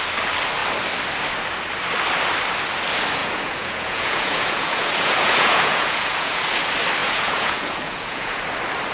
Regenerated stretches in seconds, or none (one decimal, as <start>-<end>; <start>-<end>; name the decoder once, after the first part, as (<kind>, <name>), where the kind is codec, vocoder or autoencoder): 3.2-6.4 (vocoder, Vocos); 7.0-8.4